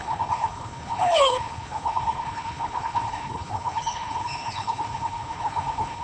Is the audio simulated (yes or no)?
yes